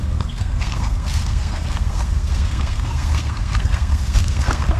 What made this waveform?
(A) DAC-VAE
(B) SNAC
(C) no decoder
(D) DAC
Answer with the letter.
B